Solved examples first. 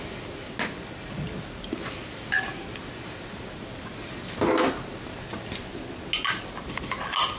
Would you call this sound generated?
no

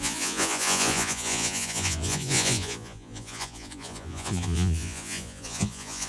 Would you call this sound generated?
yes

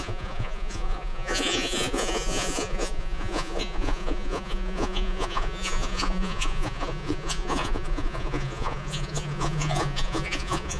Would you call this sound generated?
yes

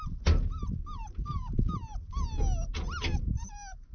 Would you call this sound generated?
no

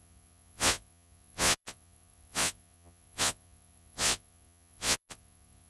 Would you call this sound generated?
yes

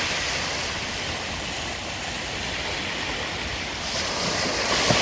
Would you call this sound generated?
no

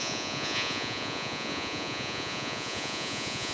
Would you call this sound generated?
yes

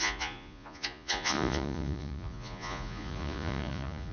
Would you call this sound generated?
yes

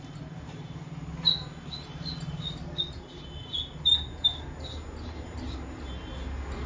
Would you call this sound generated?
no